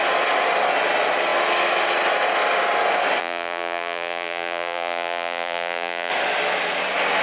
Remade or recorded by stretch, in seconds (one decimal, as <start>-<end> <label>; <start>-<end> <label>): 0.0-3.2 recorded; 3.2-6.1 remade; 6.1-7.2 recorded